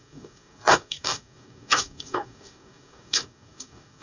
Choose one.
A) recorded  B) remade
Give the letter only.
B